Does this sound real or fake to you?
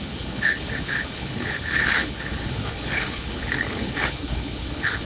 fake